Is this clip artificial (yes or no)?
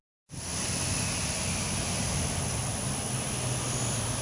no